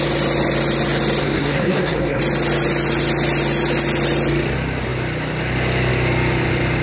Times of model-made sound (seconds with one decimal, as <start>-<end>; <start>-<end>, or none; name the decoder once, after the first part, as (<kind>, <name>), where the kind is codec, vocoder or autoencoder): 1.2-2.2 (codec, SNAC)